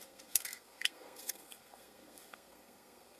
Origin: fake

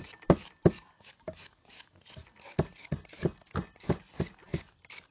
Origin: real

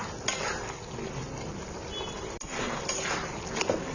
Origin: real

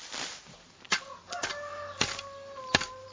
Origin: real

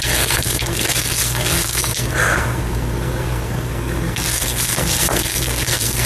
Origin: fake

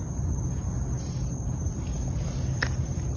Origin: real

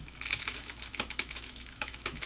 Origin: fake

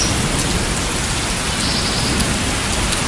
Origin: real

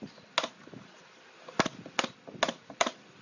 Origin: real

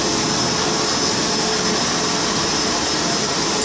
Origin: real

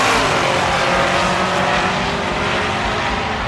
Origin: real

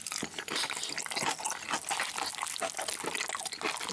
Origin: real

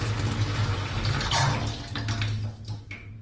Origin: real